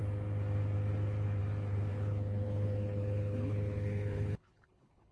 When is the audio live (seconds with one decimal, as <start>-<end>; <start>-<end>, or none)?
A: 0.0-1.9